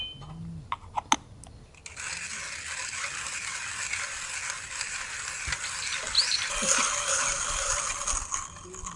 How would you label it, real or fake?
real